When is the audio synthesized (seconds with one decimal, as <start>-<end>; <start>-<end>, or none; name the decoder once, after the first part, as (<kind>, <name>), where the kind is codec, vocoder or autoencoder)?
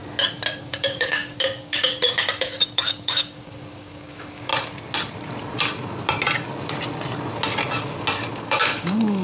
0.6-4.5 (codec, DAC); 8.4-9.2